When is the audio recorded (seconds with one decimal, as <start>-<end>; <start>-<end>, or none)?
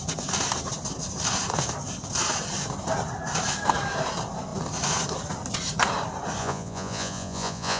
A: 0.0-6.4